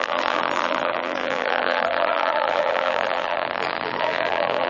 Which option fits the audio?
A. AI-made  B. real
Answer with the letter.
A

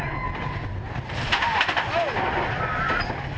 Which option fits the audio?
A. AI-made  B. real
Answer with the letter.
B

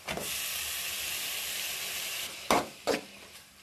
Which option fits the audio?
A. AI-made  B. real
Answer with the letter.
B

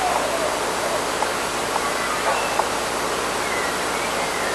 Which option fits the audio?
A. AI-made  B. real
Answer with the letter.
B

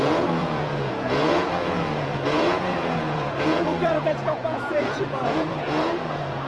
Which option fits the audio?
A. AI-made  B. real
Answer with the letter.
A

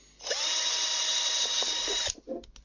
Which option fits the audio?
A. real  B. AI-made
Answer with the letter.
A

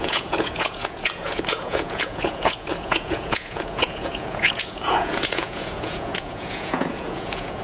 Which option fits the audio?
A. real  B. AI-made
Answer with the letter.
B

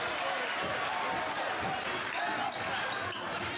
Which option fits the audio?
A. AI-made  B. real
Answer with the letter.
B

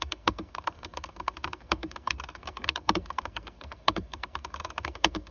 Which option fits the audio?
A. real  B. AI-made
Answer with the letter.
B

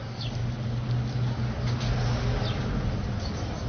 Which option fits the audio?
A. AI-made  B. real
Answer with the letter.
B